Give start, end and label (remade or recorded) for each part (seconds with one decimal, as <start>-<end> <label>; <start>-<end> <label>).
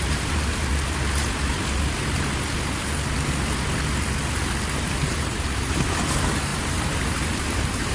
0.0-0.7 remade; 0.7-5.1 recorded; 5.1-7.9 remade